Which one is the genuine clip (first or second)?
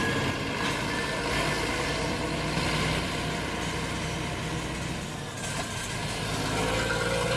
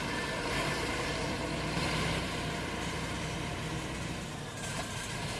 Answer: first